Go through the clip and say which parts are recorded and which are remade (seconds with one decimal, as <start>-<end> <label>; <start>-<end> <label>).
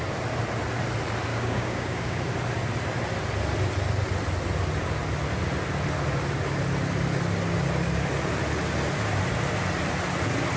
0.0-1.3 recorded; 1.3-2.2 remade; 2.2-10.6 recorded